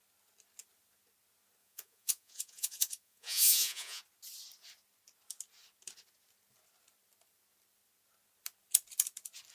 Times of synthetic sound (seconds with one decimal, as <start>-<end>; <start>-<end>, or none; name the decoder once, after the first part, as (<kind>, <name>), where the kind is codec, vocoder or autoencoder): 1.6-4.0 (vocoder, Vocos)